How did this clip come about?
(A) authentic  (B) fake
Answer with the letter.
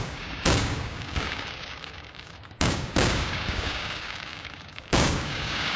B